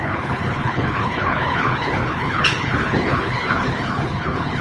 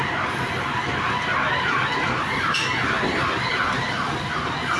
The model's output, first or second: first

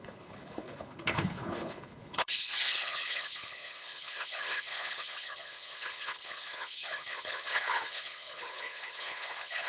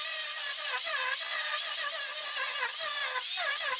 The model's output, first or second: first